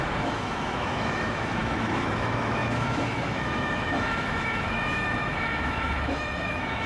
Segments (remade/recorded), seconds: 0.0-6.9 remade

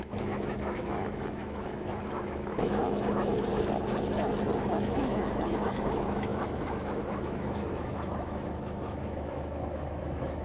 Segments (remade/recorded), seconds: 0.0-3.5 remade; 3.5-4.7 recorded; 4.7-10.4 remade

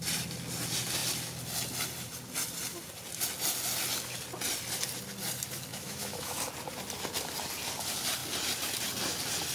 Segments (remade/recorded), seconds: 0.0-5.7 recorded; 5.7-6.4 remade; 6.4-9.5 recorded

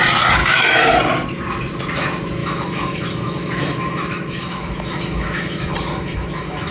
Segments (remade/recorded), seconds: 0.0-0.4 recorded; 0.4-1.0 remade; 1.0-2.4 recorded; 2.4-6.7 remade

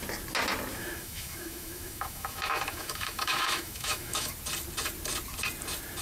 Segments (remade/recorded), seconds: 0.0-0.7 recorded; 0.7-4.3 remade; 4.3-6.0 recorded

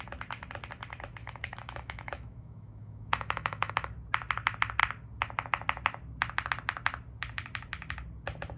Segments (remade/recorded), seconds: 0.0-1.2 recorded; 1.2-3.7 remade; 3.7-8.6 recorded

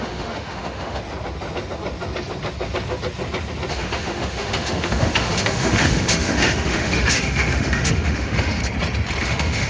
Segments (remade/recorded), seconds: 0.0-1.0 remade; 1.0-3.7 recorded; 3.7-8.6 remade; 8.6-9.2 recorded; 9.2-9.7 remade

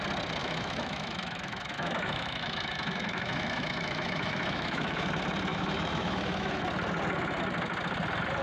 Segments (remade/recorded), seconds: 0.0-0.4 recorded; 0.4-5.1 remade; 5.1-5.5 recorded; 5.5-6.6 remade; 6.6-8.4 recorded